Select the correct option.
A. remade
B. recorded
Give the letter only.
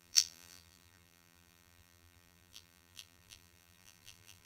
A